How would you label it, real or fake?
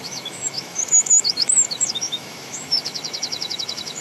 fake